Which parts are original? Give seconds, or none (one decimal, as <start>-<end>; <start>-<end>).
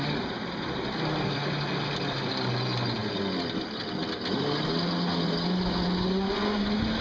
0.0-7.0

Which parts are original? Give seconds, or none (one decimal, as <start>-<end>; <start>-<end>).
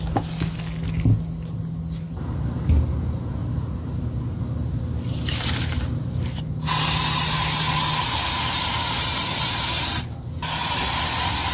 0.0-3.4; 4.0-11.5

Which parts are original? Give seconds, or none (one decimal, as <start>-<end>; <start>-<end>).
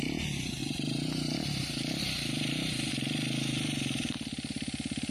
0.0-0.6; 2.9-5.1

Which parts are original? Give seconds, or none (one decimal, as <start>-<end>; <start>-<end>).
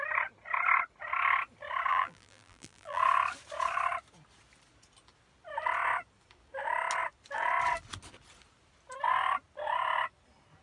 0.0-1.9; 3.0-10.6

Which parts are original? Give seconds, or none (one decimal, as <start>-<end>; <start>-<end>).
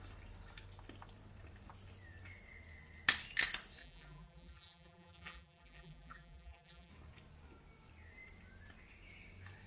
0.0-3.8; 6.9-9.7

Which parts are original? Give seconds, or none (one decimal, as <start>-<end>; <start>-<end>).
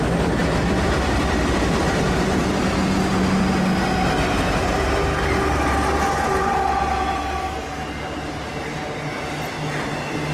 0.0-10.3